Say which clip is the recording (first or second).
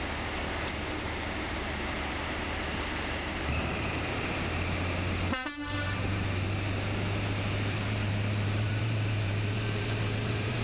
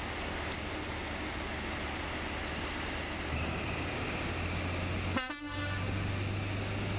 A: second